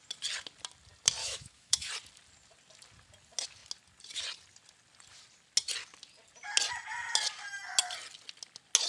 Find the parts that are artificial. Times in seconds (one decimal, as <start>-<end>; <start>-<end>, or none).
1.2-1.9